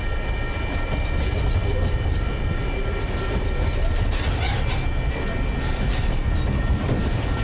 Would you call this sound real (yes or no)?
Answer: yes